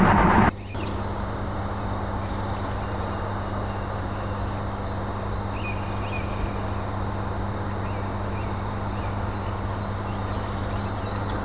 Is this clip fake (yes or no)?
no